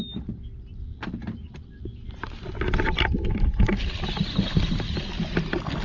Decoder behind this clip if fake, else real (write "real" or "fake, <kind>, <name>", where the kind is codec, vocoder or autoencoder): real